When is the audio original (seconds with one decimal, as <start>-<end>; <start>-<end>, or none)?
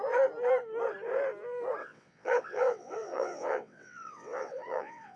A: 0.0-1.8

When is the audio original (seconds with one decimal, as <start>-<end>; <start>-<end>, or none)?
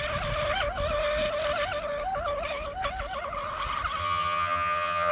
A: 0.0-4.0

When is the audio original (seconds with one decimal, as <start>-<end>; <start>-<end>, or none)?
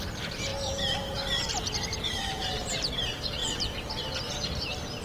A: 0.0-0.5; 2.9-3.4; 4.0-5.0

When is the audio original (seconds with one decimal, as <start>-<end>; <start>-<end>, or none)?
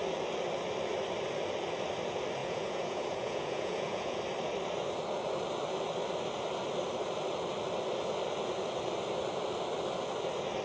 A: 0.0-2.4; 4.2-10.6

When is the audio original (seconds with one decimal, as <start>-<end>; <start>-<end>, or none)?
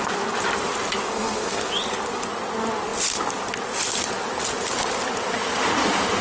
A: 0.0-1.1; 1.7-6.2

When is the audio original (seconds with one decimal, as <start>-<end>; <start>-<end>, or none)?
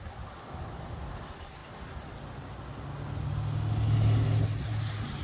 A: 0.0-5.2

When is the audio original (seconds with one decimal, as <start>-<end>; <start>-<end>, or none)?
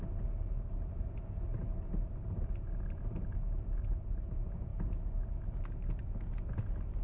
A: 0.0-7.0